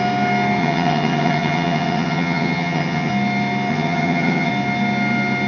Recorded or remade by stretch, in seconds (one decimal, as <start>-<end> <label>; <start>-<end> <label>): 0.0-0.6 recorded; 0.6-3.1 remade; 3.1-3.7 recorded; 3.7-4.5 remade; 4.5-5.5 recorded